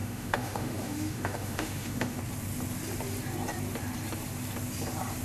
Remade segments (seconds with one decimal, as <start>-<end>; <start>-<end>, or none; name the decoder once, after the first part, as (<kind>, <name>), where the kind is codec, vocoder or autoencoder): 0.0-2.2 (autoencoder, DAC-VAE)